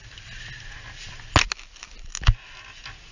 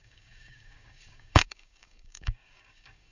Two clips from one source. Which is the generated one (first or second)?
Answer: second